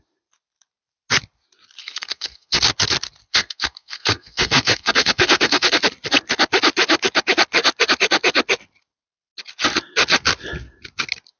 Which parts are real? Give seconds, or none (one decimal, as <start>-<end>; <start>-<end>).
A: 0.0-1.8; 2.6-3.3; 5.8-11.4